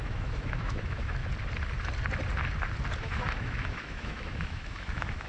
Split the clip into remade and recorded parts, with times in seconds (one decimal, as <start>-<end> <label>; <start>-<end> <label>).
0.0-1.2 remade; 1.2-3.0 recorded; 3.0-5.3 remade